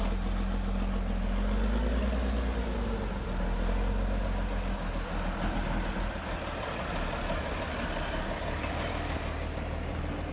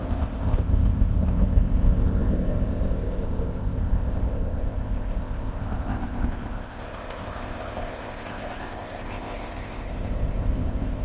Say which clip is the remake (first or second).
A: second